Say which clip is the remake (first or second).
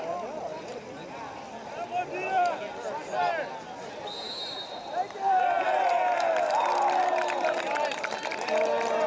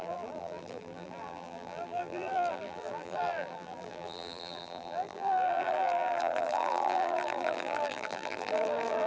second